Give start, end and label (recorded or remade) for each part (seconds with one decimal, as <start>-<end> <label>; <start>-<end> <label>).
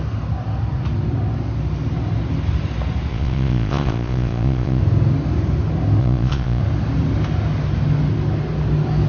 0.0-3.1 recorded; 3.1-4.8 remade; 4.8-6.0 recorded; 6.0-6.6 remade; 6.6-9.1 recorded